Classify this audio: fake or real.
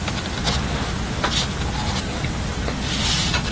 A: real